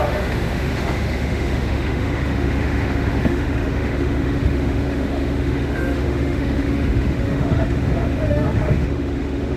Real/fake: fake